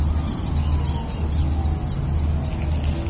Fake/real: real